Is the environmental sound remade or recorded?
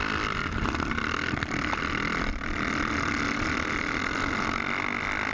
recorded